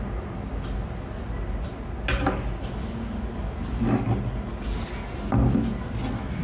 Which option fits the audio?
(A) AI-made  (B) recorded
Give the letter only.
B